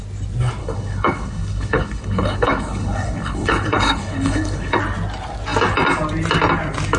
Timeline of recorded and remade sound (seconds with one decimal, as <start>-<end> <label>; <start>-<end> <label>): 0.0-0.6 recorded; 0.6-4.8 remade; 4.8-7.0 recorded